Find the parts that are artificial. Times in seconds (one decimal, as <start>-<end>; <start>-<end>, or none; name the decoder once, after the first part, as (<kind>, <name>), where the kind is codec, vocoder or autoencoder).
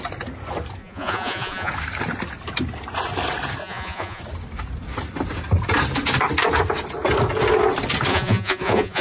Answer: 0.8-1.7 (vocoder, Vocos); 3.6-4.2; 8.1-9.0